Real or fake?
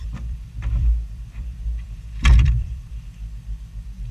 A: fake